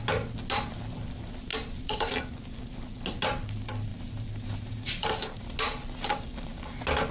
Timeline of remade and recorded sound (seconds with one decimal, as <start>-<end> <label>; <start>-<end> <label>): 0.0-1.5 recorded; 1.5-2.1 remade; 2.1-3.9 recorded; 3.9-5.4 remade; 5.4-7.1 recorded